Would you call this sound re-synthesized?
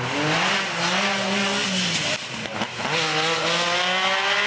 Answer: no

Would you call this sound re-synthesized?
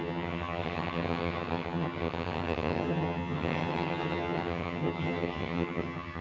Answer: yes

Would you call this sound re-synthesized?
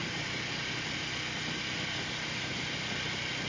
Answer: no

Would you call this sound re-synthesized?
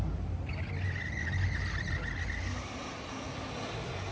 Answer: no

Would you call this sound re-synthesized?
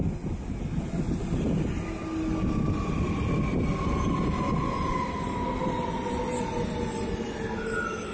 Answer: no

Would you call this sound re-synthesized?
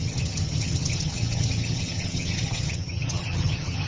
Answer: yes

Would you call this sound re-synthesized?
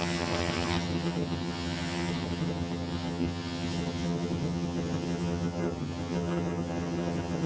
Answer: yes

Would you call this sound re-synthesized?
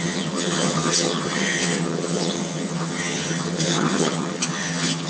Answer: yes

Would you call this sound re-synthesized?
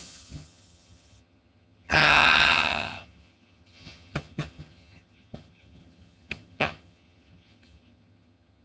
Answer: yes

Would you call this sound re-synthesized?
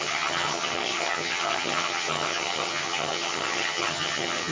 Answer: yes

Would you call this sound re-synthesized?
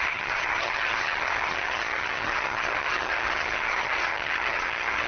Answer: yes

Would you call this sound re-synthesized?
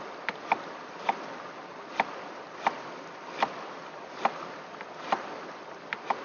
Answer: no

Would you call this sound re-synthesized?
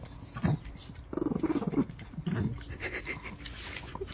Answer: no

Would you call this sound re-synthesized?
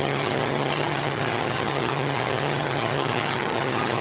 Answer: yes